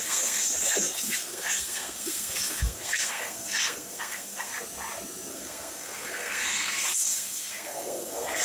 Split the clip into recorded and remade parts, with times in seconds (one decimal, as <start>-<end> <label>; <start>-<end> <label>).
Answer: 0.0-4.5 remade; 4.5-5.3 recorded; 5.3-8.4 remade